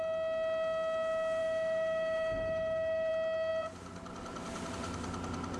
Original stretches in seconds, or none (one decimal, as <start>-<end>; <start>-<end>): 0.0-1.4; 3.1-5.6